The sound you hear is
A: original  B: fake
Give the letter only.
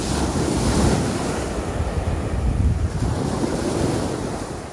A